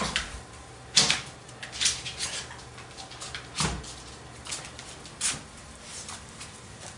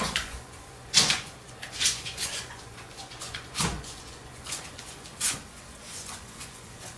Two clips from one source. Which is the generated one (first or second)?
second